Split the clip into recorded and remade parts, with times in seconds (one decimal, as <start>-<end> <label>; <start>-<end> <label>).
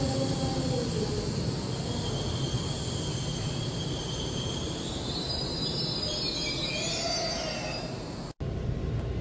0.0-3.3 recorded; 3.3-6.1 remade; 6.1-9.2 recorded